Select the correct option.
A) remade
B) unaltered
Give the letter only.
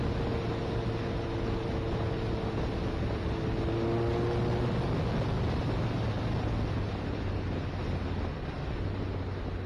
B